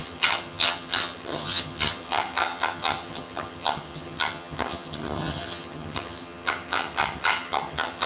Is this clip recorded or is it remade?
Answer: remade